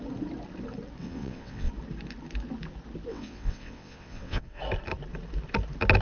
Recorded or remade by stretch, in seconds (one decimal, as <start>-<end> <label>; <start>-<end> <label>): 0.0-1.0 recorded; 1.0-1.7 remade; 1.7-3.1 recorded; 3.1-4.6 remade; 4.6-6.0 recorded